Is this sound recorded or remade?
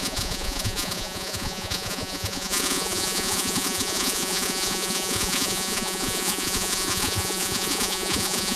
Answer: remade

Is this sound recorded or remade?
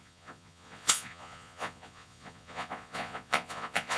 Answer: remade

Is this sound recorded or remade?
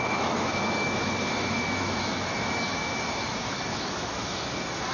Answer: remade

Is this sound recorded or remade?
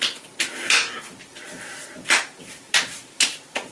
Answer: recorded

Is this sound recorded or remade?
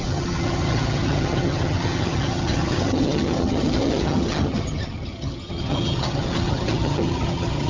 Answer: remade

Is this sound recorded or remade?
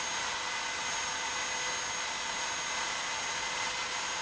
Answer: recorded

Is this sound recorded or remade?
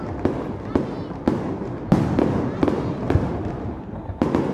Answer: recorded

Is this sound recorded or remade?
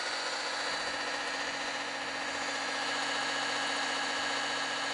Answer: remade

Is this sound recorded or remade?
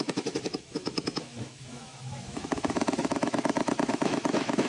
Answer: remade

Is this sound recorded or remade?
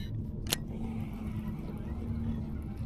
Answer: recorded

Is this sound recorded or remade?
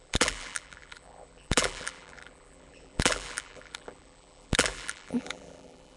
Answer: remade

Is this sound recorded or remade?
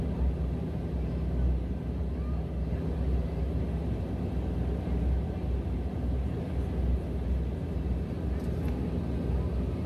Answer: recorded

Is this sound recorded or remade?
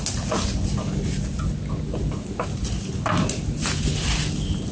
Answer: recorded